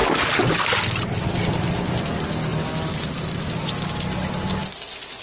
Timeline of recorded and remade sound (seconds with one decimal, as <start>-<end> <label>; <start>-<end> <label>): 0.0-5.2 recorded